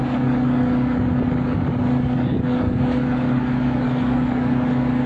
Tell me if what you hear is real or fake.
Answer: fake